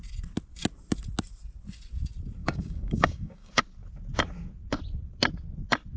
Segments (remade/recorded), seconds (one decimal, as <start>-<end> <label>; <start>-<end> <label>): 0.0-2.4 recorded; 2.4-3.6 remade; 3.6-6.0 recorded